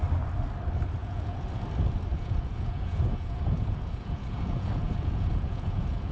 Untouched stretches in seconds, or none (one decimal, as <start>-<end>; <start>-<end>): 0.0-1.0; 1.6-2.1